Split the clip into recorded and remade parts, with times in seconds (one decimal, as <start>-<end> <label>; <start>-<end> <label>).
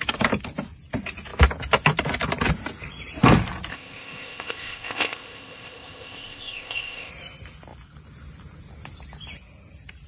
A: 0.0-3.7 recorded; 3.7-7.1 remade; 7.1-10.1 recorded